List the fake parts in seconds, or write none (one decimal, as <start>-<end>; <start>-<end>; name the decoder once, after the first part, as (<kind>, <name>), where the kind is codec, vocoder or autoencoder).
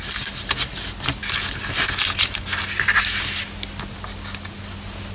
none